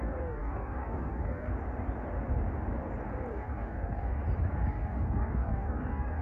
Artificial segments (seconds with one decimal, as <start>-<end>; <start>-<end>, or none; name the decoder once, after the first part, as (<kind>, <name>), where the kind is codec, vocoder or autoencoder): 0.0-1.5 (codec, DAC); 3.3-4.2; 4.7-6.2